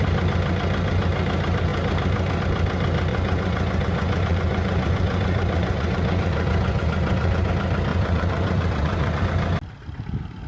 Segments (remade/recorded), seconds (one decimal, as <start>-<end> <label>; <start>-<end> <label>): 0.0-3.1 recorded; 3.1-7.5 remade; 7.5-7.9 recorded; 7.9-9.2 remade; 9.2-10.5 recorded